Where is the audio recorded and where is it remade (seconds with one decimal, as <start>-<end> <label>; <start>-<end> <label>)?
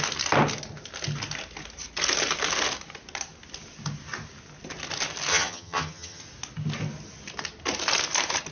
0.0-5.3 recorded; 5.3-6.2 remade; 6.2-8.5 recorded